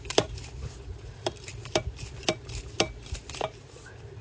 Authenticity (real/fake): real